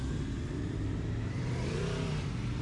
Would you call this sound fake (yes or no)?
yes